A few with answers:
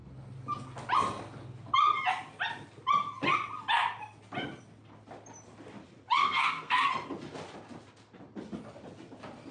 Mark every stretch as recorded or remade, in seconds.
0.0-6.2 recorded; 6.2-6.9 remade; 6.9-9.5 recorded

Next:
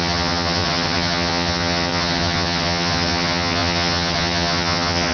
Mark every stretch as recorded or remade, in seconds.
0.0-5.1 remade

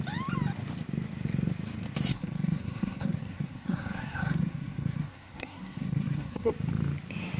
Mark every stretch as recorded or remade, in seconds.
0.0-2.1 recorded; 2.1-6.5 remade; 6.5-7.4 recorded

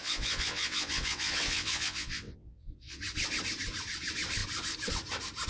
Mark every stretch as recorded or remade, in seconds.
0.0-3.0 remade; 3.0-5.5 recorded

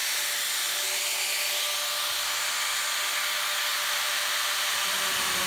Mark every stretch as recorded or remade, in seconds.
0.0-3.7 recorded; 3.7-5.5 remade

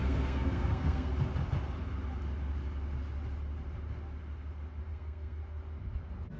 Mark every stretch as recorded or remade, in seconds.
0.0-1.1 remade; 1.1-4.9 recorded; 4.9-5.4 remade; 5.4-6.4 recorded